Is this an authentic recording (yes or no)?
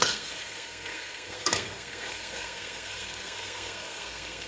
no